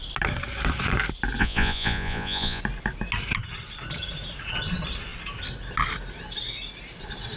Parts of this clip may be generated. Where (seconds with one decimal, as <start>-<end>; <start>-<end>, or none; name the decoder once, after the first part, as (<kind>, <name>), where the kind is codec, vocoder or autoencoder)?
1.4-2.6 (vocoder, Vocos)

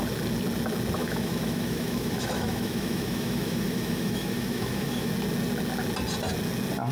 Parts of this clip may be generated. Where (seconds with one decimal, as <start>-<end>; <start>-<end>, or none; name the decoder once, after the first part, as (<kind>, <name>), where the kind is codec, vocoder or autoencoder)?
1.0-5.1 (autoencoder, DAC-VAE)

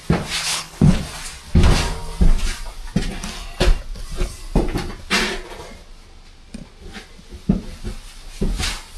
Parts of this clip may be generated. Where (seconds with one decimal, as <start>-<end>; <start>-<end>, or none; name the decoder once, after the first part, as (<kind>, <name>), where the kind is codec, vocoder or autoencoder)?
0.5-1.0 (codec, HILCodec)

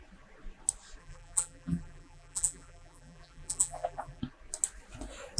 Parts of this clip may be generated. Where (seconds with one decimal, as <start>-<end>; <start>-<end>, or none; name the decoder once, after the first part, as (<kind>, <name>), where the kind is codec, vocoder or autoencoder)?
1.0-4.2 (vocoder, BigVGAN v2)

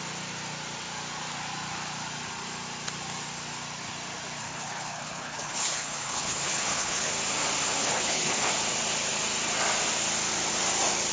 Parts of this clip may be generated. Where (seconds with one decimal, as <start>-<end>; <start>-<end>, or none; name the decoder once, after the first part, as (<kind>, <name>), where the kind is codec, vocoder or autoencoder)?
4.4-7.1 (codec, HILCodec); 7.8-8.5

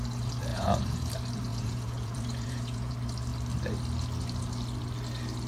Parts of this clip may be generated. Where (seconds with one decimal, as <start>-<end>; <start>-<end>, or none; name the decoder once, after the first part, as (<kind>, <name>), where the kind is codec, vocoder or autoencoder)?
0.5-1.1 (vocoder, Vocos); 1.5-2.9